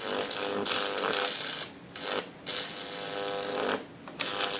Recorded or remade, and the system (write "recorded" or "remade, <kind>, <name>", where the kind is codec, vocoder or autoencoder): recorded